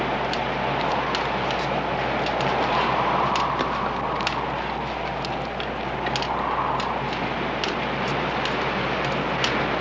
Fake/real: real